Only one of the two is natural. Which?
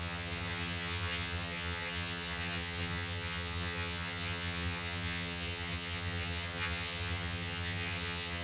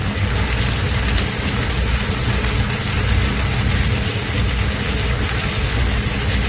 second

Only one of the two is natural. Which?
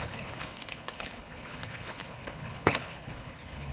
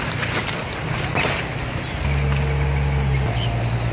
second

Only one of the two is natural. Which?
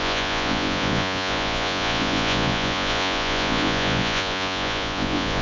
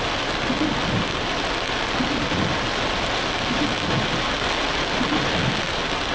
second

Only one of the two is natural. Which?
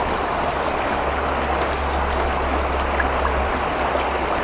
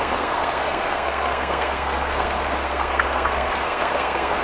first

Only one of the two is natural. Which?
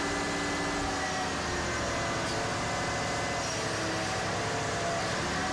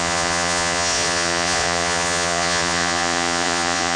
first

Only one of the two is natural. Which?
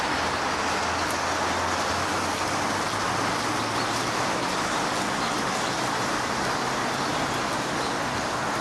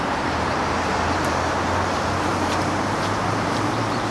first